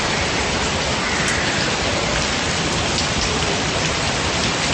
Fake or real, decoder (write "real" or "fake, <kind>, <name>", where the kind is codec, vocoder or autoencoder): fake, vocoder, BigVGAN v2